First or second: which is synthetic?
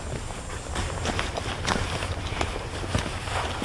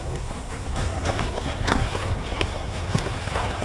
second